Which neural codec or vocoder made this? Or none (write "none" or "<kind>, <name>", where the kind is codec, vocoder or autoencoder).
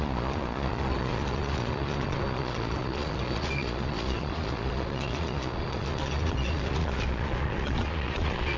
vocoder, Vocos